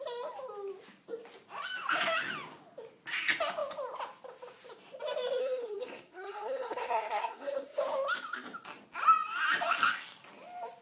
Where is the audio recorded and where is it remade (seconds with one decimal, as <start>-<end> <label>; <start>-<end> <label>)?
0.0-5.4 recorded; 5.4-7.8 remade; 7.8-10.8 recorded